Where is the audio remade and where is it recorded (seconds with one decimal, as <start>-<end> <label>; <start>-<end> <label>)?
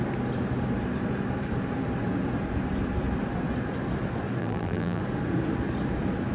0.0-4.4 recorded; 4.4-5.0 remade; 5.0-6.3 recorded